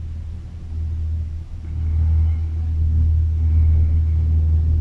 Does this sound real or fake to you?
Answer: real